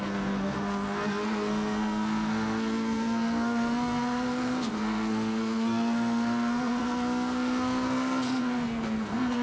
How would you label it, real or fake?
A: fake